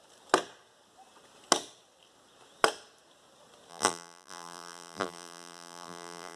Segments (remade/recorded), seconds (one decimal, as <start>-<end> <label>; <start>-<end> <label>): 0.0-3.7 recorded; 3.7-6.4 remade